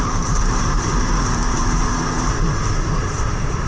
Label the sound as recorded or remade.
remade